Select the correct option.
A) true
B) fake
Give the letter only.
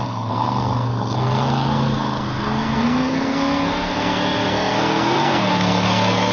B